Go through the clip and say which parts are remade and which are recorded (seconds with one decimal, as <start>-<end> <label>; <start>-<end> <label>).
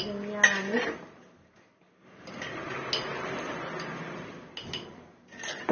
0.0-5.7 recorded